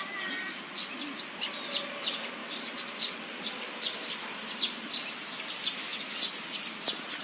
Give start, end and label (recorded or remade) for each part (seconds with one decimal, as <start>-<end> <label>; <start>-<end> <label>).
0.0-7.2 recorded